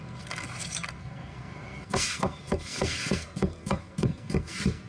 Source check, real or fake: fake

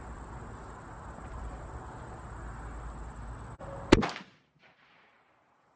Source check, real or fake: real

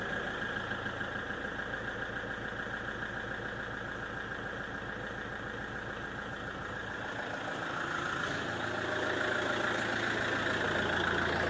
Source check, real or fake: real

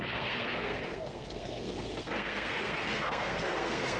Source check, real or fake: fake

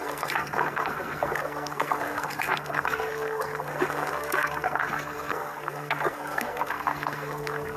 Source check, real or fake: fake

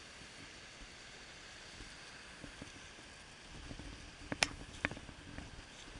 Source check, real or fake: real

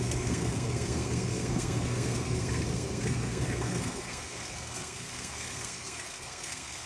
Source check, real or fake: fake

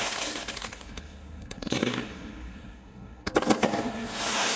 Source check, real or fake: fake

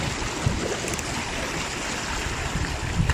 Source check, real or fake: real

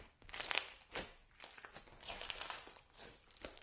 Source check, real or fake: real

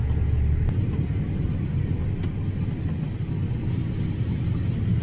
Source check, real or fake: real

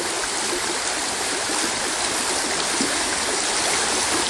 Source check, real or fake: real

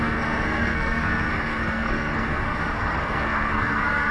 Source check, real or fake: fake